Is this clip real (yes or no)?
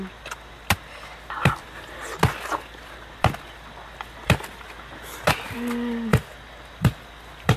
yes